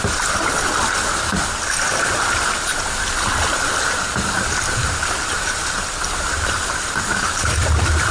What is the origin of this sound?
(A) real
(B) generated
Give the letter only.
A